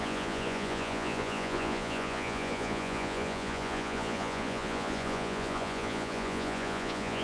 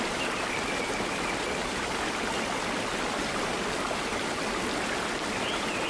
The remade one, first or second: first